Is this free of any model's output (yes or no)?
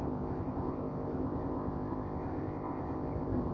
no